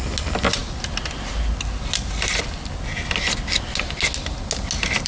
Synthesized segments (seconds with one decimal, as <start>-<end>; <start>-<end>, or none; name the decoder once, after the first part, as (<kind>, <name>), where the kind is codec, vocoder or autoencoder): none